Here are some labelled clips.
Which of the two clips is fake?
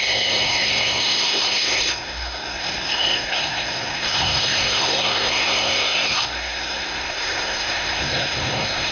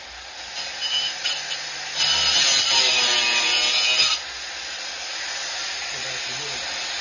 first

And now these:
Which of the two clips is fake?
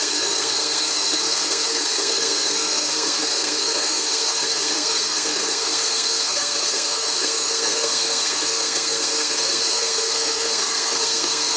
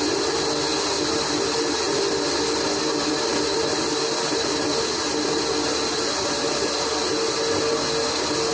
first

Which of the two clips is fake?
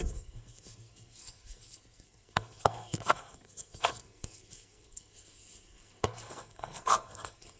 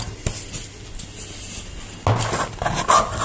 first